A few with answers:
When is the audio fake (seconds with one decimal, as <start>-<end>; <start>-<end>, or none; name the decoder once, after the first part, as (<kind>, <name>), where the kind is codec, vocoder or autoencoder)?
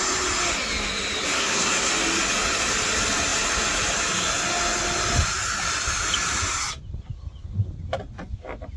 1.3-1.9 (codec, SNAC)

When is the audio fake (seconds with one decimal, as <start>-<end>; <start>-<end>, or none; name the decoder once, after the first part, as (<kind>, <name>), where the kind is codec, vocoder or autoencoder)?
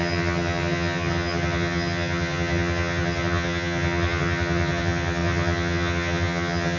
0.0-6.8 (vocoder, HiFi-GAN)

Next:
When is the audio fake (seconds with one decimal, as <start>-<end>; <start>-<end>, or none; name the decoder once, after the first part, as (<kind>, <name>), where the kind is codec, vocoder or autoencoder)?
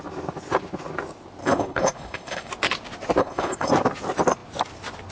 1.4-2.5 (codec, HILCodec); 3.2-3.7